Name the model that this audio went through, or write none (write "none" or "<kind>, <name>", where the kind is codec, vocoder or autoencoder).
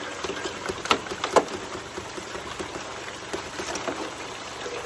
none